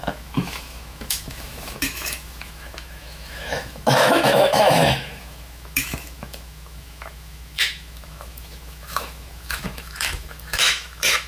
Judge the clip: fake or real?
fake